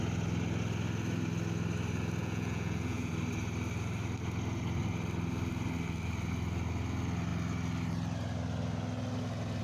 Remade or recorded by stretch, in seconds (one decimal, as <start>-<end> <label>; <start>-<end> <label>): 0.0-2.2 recorded; 2.2-3.1 remade; 3.1-9.6 recorded